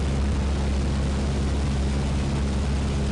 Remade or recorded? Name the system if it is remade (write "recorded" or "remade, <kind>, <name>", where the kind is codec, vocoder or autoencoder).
recorded